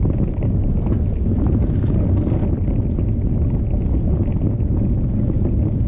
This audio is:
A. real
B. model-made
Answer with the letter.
A